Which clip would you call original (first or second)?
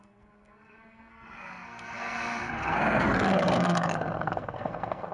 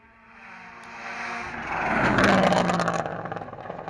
second